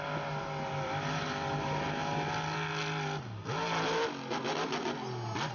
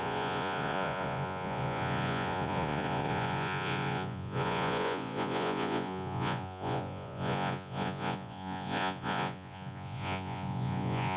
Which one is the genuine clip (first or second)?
first